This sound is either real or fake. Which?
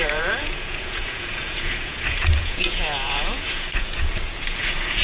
fake